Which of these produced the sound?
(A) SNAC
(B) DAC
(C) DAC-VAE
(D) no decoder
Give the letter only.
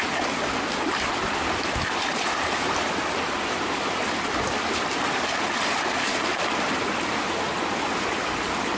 D